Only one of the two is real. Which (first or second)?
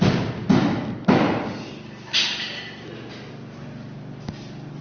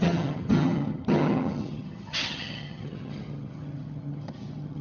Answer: first